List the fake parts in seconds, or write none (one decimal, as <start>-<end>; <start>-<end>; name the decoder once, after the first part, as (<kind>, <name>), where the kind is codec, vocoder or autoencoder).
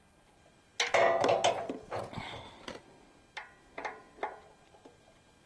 none